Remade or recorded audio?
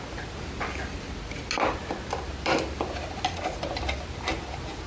recorded